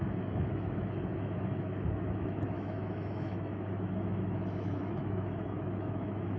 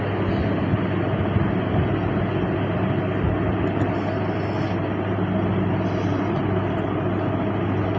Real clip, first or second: second